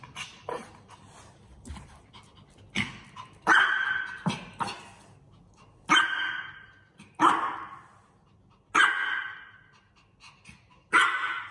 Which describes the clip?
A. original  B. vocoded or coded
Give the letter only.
A